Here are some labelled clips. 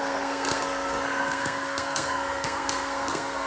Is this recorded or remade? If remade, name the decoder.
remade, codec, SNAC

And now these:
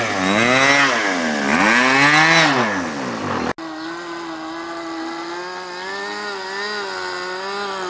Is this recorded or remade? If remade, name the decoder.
recorded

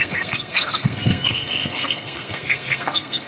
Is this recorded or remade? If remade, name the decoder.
remade, codec, SNAC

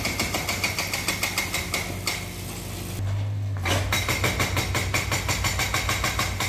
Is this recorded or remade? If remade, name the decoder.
recorded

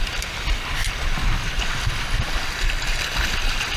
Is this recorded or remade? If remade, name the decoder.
recorded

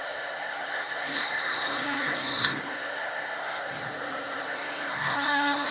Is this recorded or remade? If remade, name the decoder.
remade, codec, SNAC